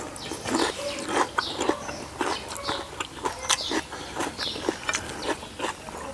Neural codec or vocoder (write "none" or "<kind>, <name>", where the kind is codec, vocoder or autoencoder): none